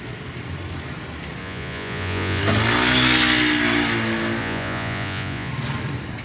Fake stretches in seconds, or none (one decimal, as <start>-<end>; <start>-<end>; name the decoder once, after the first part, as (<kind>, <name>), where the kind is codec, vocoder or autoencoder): 1.4-2.4 (vocoder, Vocos); 4.4-5.5